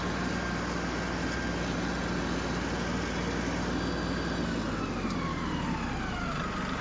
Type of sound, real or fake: real